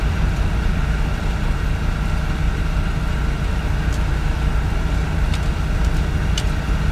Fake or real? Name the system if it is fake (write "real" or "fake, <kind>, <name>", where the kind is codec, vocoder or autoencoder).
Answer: real